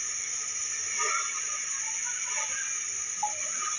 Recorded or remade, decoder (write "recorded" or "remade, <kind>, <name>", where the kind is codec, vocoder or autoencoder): recorded